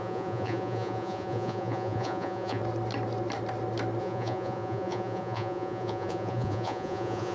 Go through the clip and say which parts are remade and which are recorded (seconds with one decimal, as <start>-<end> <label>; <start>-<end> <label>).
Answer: 0.0-2.6 remade; 2.6-4.0 recorded; 4.0-7.3 remade